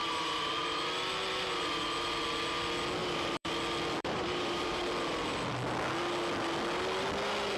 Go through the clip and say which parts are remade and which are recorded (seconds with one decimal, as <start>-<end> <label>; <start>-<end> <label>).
0.0-0.6 remade; 0.6-3.0 recorded; 3.0-3.5 remade; 3.5-4.0 recorded; 4.0-4.8 remade; 4.8-7.6 recorded